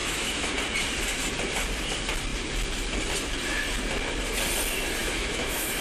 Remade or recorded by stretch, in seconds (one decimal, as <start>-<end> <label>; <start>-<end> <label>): 0.0-0.5 remade; 0.5-5.0 recorded; 5.0-5.8 remade